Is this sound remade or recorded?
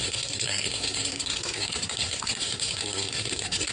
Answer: remade